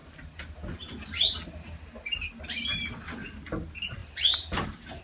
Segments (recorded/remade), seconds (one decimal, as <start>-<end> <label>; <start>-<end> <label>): 0.0-4.0 recorded; 4.0-5.0 remade